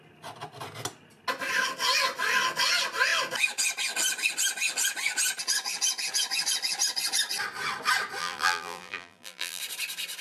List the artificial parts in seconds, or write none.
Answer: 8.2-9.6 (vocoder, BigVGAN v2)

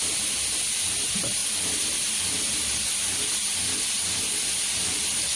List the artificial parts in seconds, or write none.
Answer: none

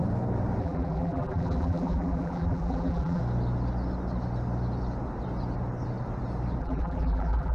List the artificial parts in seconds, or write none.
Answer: 0.6-3.2 (vocoder, BigVGAN v2); 6.6-7.5

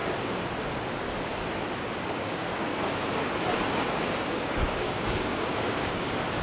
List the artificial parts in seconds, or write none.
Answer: 2.1-2.7 (codec, DAC); 3.5-6.4